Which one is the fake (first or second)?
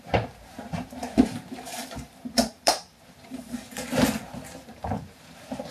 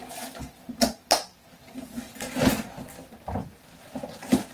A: first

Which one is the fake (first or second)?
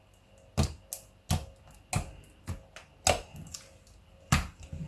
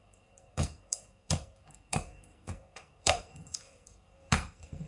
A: second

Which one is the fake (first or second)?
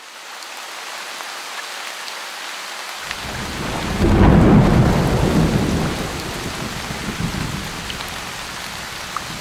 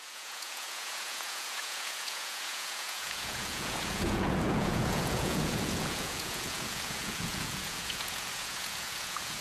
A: second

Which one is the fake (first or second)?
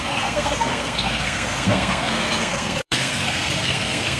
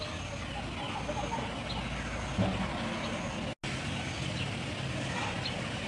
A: first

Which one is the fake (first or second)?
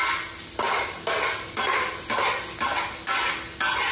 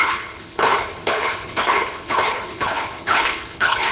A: second